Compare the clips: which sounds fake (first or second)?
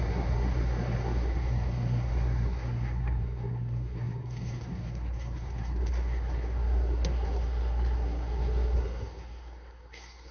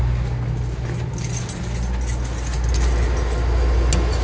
first